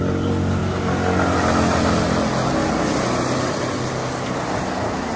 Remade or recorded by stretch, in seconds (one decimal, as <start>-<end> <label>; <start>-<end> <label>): 0.0-5.2 recorded